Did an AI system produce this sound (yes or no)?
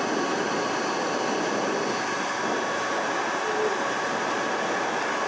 no